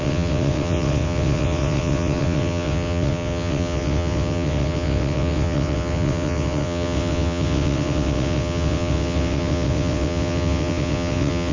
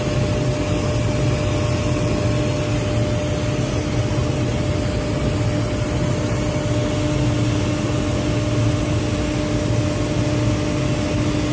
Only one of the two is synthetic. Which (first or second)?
first